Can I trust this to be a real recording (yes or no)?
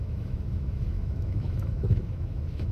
no